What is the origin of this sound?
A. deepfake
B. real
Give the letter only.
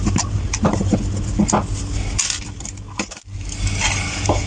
A